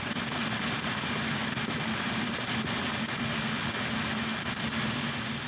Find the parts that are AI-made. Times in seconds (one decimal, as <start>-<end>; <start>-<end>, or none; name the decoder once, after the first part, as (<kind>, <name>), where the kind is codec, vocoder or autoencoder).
none